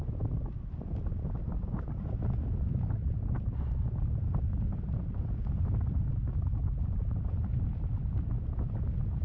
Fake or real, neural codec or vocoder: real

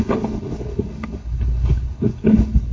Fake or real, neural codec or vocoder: fake, codec, HILCodec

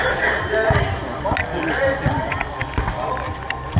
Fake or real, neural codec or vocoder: real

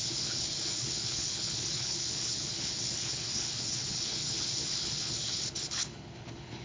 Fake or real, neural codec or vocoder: fake, codec, HILCodec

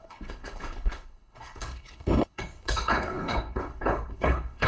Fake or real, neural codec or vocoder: fake, codec, HILCodec